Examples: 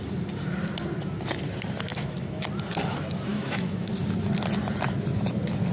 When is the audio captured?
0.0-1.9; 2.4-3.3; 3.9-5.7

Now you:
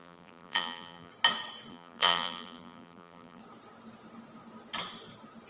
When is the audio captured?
1.1-1.7; 3.4-5.5

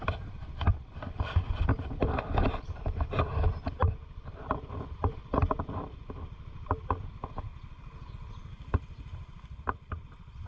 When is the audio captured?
7.5-8.1

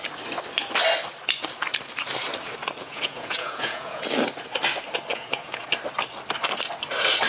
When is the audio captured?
0.0-2.8; 4.0-5.1; 5.6-7.3

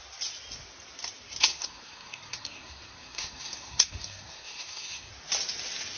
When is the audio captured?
0.0-1.5; 5.1-6.0

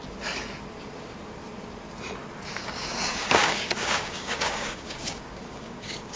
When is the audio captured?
0.0-2.6

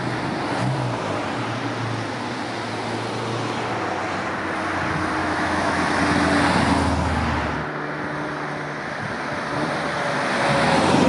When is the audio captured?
0.0-5.2; 6.0-11.1

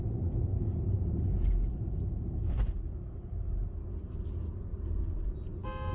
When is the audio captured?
0.0-0.5; 1.8-5.9